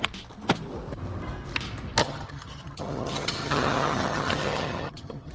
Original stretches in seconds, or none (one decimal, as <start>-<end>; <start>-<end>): 0.0-2.0